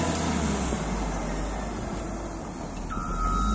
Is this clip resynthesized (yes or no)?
no